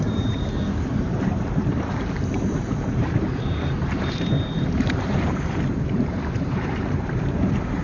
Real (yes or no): no